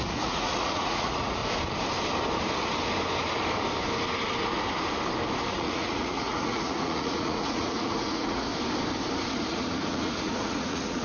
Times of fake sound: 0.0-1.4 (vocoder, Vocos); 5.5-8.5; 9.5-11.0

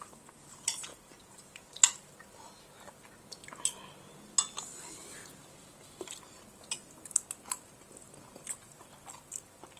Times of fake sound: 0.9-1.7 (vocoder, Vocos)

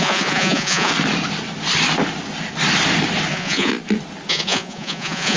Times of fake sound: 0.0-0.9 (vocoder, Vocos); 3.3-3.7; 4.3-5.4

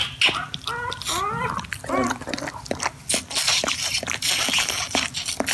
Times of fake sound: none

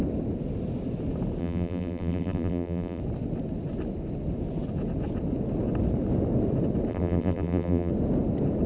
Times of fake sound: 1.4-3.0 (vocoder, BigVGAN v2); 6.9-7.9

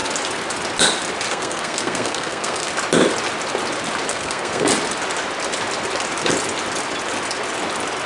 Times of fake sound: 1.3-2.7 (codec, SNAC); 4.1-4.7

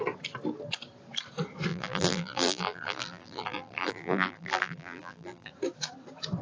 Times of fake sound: 1.7-5.5 (vocoder, BigVGAN v2)